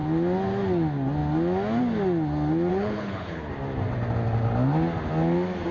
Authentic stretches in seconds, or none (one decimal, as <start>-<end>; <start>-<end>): 0.0-2.7; 3.5-5.7